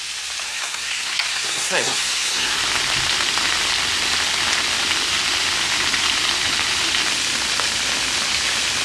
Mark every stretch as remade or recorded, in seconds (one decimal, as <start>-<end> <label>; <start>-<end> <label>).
0.0-0.5 recorded; 0.5-2.6 remade; 2.6-8.8 recorded